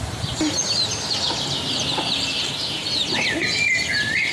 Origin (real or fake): real